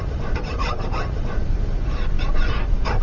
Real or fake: fake